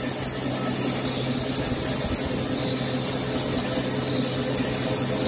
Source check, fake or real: real